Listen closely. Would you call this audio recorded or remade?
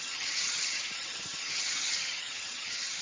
remade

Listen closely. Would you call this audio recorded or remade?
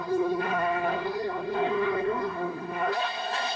remade